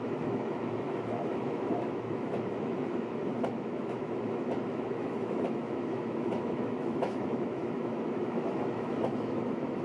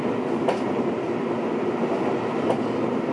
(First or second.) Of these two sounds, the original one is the second